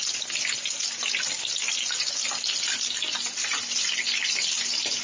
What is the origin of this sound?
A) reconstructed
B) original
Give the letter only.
B